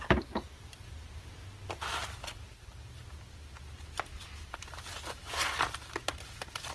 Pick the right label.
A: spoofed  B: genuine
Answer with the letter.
B